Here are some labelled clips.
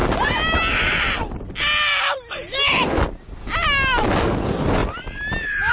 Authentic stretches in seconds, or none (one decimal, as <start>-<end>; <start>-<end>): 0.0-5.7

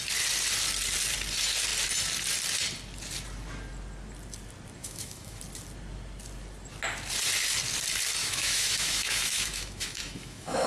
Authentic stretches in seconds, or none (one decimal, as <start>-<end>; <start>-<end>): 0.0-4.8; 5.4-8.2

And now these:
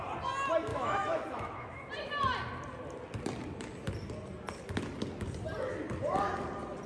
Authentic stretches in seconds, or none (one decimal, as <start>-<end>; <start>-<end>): 0.0-0.7; 1.9-6.9

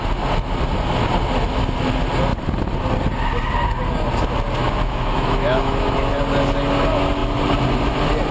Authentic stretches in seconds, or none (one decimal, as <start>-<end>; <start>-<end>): 0.0-4.6; 6.1-8.3